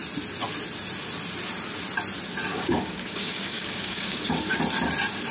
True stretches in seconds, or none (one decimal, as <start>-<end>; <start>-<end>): 0.0-2.5; 4.6-5.3